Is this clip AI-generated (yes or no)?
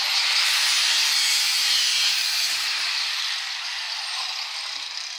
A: yes